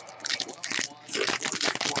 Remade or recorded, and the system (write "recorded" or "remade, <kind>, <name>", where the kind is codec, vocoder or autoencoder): recorded